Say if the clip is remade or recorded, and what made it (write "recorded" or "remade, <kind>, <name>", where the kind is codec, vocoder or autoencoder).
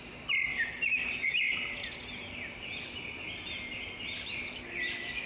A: recorded